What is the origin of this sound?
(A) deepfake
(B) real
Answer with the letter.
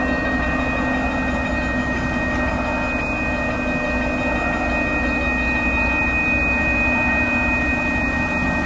B